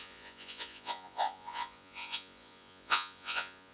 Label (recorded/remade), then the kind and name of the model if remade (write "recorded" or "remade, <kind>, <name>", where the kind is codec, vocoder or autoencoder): remade, vocoder, Vocos